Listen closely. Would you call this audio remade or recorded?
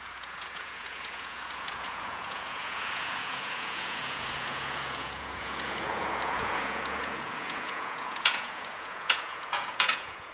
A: remade